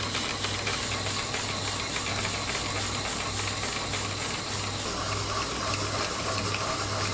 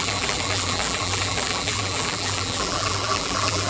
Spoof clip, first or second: second